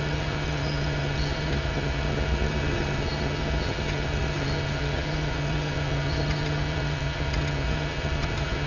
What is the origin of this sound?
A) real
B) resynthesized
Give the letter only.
B